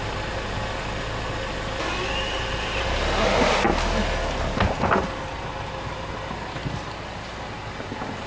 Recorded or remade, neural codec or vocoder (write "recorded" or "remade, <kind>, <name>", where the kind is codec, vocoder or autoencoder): recorded